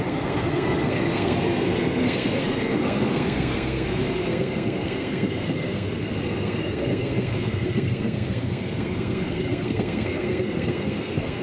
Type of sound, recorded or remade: remade